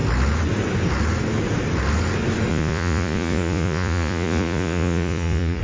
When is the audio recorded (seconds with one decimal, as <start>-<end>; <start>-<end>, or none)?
0.0-2.5